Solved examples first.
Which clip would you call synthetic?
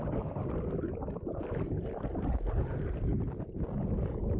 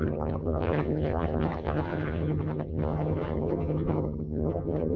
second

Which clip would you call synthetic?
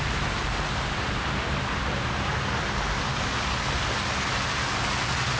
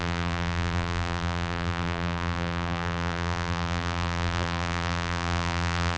second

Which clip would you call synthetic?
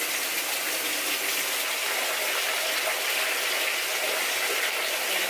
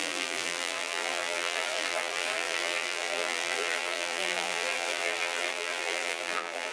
second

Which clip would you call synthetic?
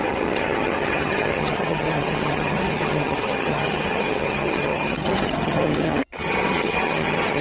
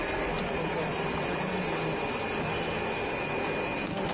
first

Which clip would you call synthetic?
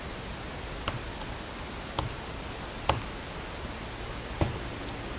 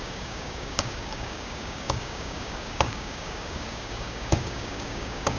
second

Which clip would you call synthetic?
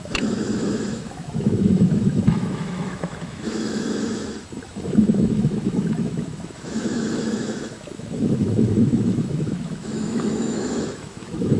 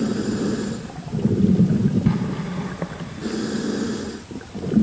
first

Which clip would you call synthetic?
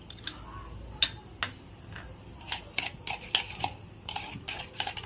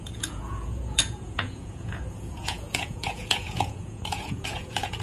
second